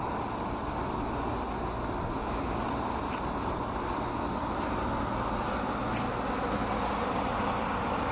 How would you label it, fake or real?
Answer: real